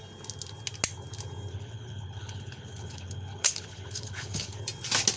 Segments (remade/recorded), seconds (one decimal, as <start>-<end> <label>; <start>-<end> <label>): 0.0-1.5 recorded; 1.5-4.6 remade; 4.6-5.2 recorded